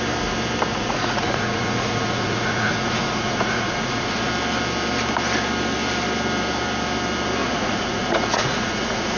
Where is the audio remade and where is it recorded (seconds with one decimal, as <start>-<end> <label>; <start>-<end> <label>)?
0.0-0.7 recorded; 0.7-4.3 remade; 4.3-7.4 recorded; 7.4-9.2 remade